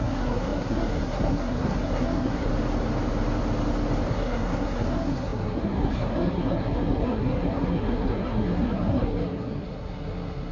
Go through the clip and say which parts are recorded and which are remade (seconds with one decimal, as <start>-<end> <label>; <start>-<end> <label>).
0.0-2.5 remade; 2.5-4.1 recorded; 4.1-10.5 remade